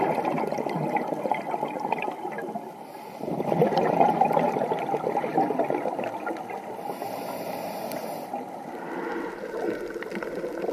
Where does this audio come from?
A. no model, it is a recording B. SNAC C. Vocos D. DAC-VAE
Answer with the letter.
A